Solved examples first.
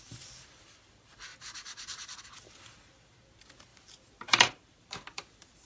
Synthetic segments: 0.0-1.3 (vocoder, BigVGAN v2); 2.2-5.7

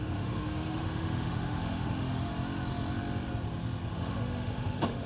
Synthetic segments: 0.0-2.3 (autoencoder, DAC-VAE); 3.9-5.1

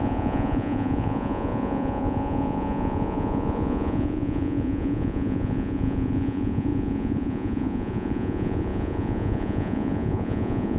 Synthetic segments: 0.0-10.8 (vocoder, Vocos)

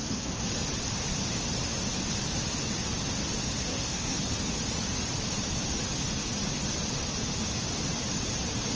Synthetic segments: 0.0-0.5 (codec, SNAC); 3.6-4.2